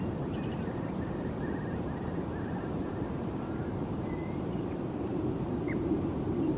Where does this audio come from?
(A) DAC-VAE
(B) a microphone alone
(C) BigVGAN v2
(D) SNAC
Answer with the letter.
C